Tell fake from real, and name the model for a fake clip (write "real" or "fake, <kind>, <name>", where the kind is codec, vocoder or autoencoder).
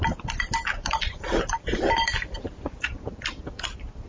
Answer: real